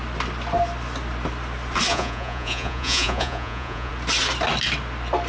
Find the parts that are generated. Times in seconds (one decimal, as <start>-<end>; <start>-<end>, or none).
1.9-3.9